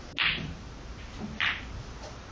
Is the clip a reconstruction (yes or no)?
no